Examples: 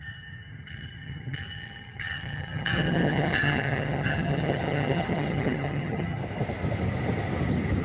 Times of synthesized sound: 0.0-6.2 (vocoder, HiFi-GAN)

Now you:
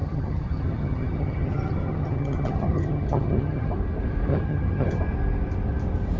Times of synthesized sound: 0.0-3.7 (vocoder, HiFi-GAN); 4.3-5.0

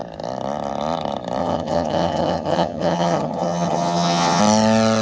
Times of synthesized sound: 1.4-4.4 (vocoder, HiFi-GAN)

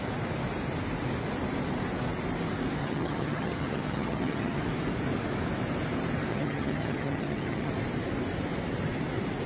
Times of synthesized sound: 2.8-4.6 (vocoder, HiFi-GAN); 6.3-7.7

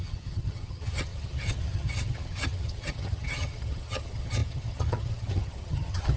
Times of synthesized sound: 0.0-6.2 (vocoder, HiFi-GAN)

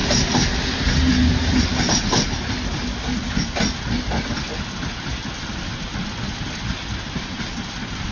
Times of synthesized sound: none